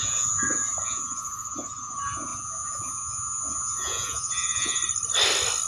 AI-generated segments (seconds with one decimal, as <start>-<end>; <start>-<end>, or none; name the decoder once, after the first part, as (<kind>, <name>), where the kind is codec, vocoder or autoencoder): 0.0-4.8 (vocoder, Vocos)